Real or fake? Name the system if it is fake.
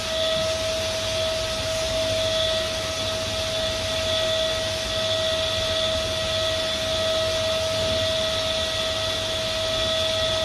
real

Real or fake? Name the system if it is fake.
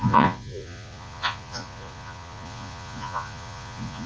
fake, vocoder, Vocos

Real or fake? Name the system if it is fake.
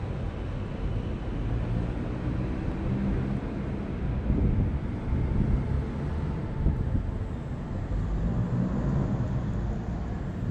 real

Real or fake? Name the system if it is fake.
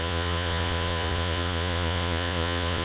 fake, vocoder, Vocos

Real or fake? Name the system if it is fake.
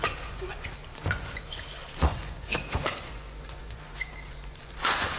fake, vocoder, Vocos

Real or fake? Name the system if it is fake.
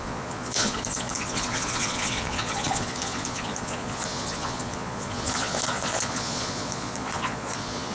fake, vocoder, Vocos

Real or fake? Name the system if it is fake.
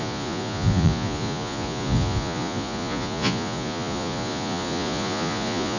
fake, vocoder, Vocos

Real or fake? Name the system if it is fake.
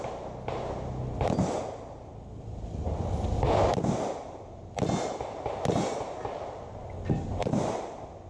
real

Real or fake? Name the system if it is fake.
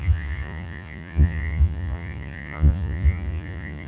fake, vocoder, Vocos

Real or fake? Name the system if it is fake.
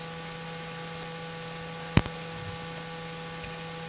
real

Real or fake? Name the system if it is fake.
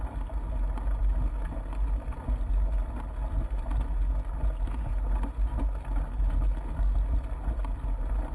real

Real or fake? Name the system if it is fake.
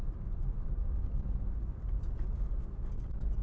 real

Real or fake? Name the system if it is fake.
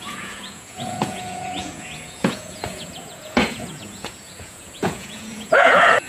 fake, vocoder, Vocos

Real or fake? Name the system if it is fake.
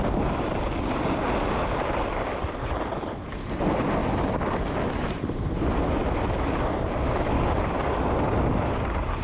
real